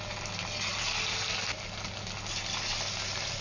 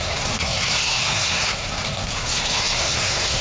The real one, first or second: first